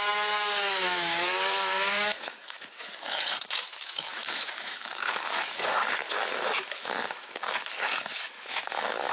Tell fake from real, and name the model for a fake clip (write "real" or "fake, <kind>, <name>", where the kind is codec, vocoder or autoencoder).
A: fake, autoencoder, DAC-VAE